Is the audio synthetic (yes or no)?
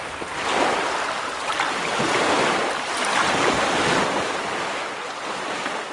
no